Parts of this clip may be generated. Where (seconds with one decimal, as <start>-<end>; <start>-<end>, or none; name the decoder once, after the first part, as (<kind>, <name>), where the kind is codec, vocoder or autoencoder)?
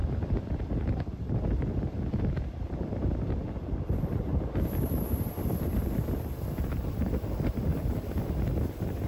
0.0-4.3 (vocoder, BigVGAN v2); 5.1-9.1